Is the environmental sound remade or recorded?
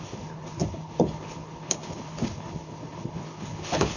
remade